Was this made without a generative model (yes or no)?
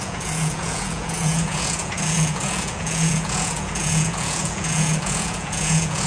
no